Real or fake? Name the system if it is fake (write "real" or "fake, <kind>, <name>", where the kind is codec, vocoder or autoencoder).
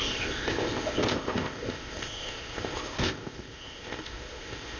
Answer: fake, codec, ZipCodec